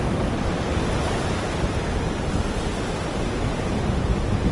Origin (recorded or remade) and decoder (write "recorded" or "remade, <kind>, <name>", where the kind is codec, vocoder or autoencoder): recorded